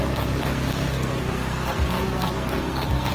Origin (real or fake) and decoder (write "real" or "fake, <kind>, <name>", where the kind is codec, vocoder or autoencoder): fake, codec, SNAC